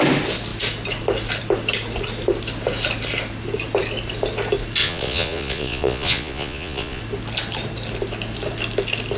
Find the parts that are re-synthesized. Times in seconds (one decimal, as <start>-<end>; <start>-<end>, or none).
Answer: 4.8-7.0